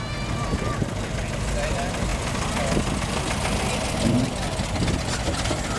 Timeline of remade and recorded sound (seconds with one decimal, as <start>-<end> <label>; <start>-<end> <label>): 0.0-5.8 recorded